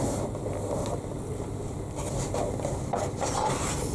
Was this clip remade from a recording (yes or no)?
no